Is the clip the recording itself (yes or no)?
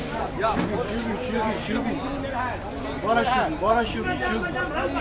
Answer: yes